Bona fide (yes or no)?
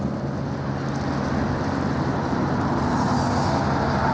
yes